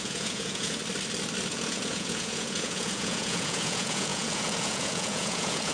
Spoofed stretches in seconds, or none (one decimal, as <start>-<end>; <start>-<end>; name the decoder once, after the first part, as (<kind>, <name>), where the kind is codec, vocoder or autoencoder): 0.0-0.8 (vocoder, Vocos); 1.5-5.7